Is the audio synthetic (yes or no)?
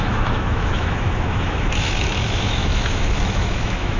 yes